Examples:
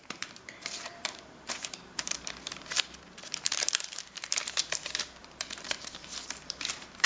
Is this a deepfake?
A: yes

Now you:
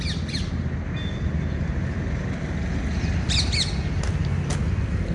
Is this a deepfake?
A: no